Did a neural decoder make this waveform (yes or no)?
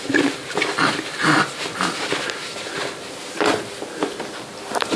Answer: no